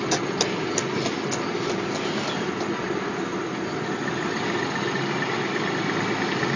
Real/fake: real